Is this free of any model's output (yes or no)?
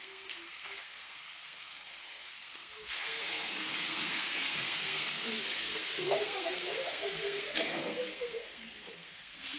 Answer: no